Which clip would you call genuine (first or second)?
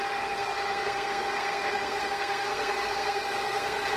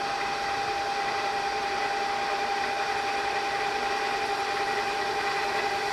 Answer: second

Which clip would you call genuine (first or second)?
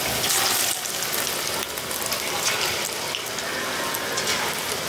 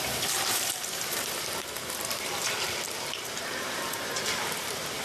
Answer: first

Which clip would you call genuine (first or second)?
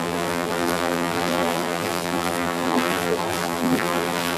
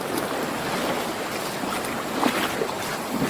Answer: second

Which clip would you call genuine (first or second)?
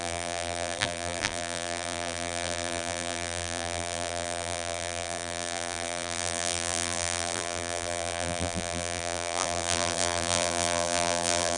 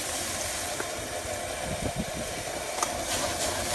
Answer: second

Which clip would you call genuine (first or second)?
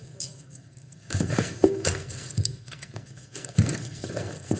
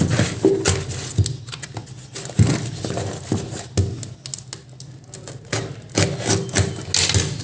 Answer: second